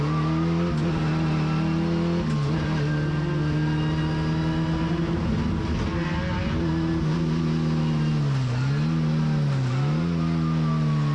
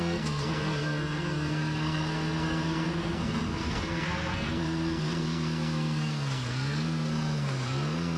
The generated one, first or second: second